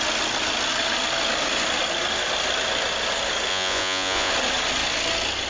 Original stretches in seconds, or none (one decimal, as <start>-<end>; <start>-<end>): 0.0-3.5; 4.3-5.5